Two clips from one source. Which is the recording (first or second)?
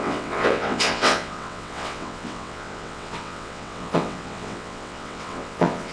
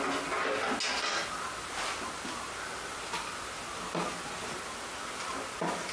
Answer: second